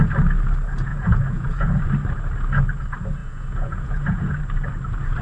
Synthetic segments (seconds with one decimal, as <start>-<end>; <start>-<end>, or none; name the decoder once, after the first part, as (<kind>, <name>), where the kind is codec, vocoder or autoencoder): 0.9-1.8 (vocoder, Vocos); 3.2-4.4